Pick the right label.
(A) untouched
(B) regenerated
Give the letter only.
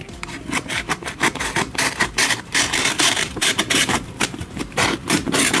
B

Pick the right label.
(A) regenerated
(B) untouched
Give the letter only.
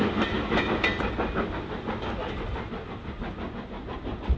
B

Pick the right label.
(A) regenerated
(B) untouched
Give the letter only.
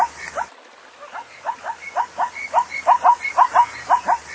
B